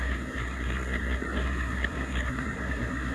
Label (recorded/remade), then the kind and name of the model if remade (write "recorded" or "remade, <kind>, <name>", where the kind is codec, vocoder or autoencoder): remade, codec, SNAC